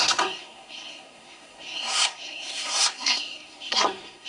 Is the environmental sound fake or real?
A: fake